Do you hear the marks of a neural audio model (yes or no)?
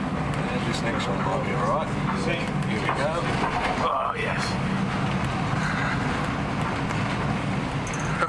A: no